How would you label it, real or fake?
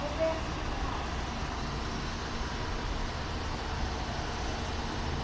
real